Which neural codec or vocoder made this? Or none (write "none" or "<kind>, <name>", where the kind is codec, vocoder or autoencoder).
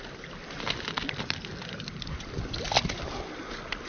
none